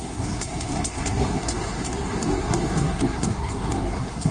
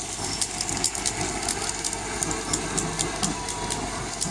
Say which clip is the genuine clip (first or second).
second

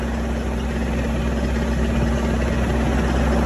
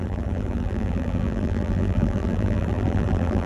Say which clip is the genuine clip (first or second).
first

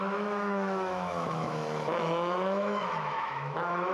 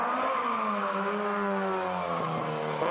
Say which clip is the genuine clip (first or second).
second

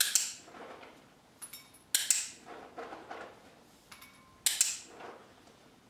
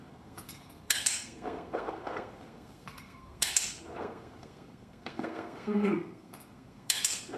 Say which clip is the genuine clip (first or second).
first